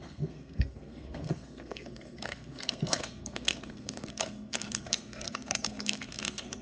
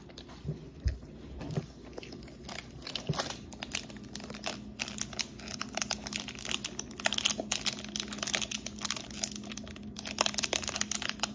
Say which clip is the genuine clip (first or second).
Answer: second